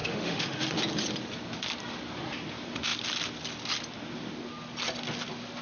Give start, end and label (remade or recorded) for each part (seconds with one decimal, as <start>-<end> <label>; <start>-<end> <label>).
0.0-0.8 remade; 0.8-5.6 recorded